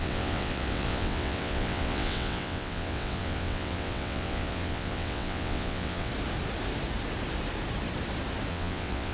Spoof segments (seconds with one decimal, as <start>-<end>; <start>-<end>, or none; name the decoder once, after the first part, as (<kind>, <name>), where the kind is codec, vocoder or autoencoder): 0.0-6.1 (vocoder, WaveNeXt); 8.5-9.1